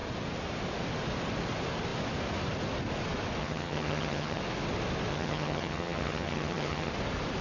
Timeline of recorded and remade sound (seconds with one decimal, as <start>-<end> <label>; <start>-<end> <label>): 0.0-3.4 recorded; 3.4-4.4 remade; 4.4-5.1 recorded; 5.1-6.9 remade; 6.9-7.4 recorded